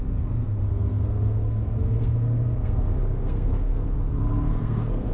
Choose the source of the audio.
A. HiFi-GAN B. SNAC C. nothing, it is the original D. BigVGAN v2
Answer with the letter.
B